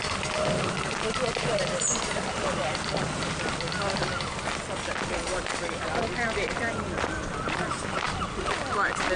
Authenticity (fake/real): real